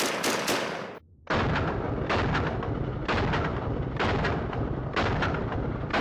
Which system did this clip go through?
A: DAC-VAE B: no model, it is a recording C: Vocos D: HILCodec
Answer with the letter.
B